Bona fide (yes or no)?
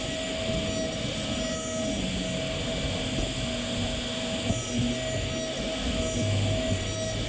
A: yes